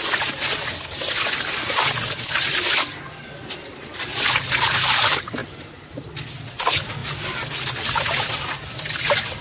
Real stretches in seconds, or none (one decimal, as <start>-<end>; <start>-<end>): 0.0-9.4